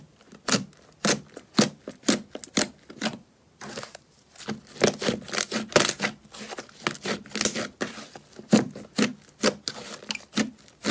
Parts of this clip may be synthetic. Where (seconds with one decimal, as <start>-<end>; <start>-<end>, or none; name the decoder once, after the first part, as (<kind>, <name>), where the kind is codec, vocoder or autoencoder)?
3.1-4.3 (vocoder, BigVGAN v2)